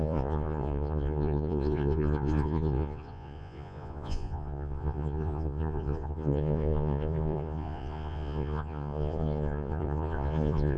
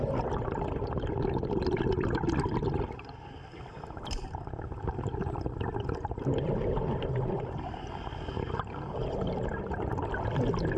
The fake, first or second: first